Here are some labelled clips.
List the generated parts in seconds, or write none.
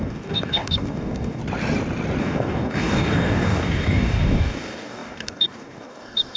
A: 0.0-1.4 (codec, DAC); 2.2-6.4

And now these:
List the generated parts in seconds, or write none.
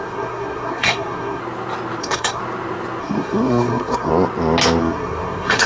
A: 0.0-1.4 (codec, SNAC); 2.0-2.4; 3.0-4.1; 4.8-5.7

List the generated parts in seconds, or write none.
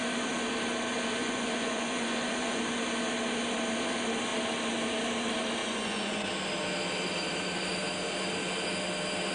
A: 1.2-2.6 (vocoder, Vocos); 5.6-6.3